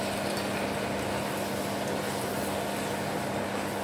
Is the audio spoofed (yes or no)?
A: no